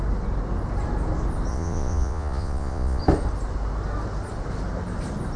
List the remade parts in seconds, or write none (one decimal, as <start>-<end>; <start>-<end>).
1.5-3.0